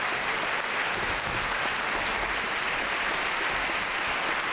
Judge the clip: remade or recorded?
recorded